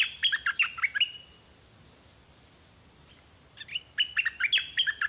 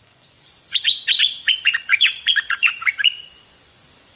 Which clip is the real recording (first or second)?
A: first